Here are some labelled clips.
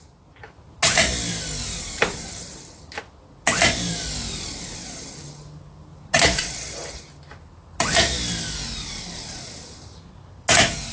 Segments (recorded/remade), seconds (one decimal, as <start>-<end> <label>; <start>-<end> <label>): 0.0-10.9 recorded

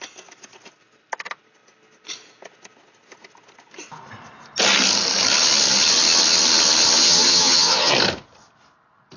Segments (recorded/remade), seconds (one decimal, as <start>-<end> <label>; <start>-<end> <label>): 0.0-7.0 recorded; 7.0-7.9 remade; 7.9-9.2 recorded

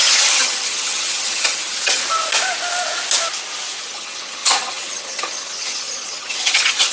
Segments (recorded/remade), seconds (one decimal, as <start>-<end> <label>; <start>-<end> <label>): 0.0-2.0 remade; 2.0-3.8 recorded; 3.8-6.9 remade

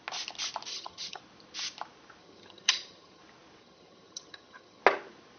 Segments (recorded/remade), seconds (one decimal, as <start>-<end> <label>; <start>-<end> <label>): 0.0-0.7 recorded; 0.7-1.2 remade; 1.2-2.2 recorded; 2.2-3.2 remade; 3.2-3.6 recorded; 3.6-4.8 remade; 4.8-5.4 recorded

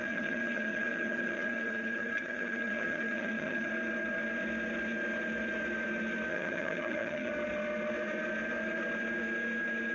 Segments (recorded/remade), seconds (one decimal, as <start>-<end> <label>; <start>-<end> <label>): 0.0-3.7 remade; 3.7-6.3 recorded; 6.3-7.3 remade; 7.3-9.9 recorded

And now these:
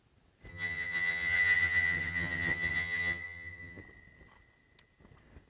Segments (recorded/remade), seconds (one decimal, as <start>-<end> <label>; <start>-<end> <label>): 0.0-0.5 recorded; 0.5-3.8 remade; 3.8-5.5 recorded

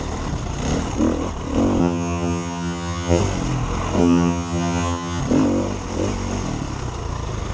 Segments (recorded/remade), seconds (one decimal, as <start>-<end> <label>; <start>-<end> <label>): 0.0-1.8 recorded; 1.8-3.2 remade; 3.2-4.0 recorded; 4.0-5.2 remade; 5.2-7.5 recorded

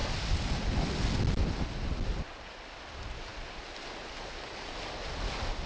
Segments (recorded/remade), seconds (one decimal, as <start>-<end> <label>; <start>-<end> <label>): 0.0-5.7 recorded